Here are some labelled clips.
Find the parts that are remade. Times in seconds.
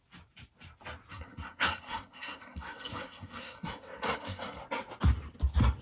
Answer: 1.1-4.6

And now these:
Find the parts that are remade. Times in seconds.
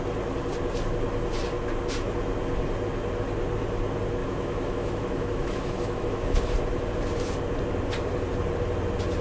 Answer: 4.2-6.4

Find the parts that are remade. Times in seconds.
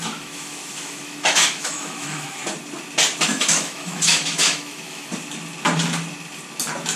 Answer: 0.0-2.4; 3.2-5.1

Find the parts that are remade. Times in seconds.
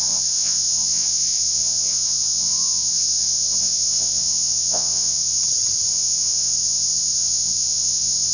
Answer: 0.0-5.4; 5.9-8.3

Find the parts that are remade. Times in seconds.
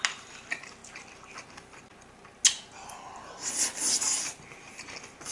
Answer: none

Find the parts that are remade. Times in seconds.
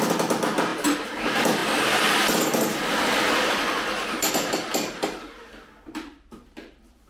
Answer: none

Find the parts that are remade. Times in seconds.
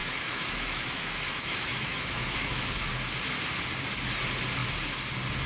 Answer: 0.0-2.9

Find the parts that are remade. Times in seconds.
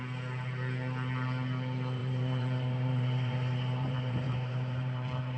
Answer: 2.0-5.4